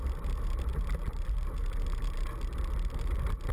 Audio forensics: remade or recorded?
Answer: recorded